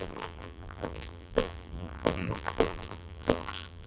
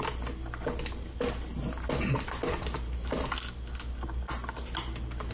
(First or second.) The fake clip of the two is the first